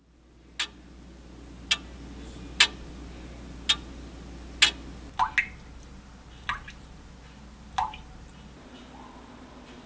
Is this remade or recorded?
recorded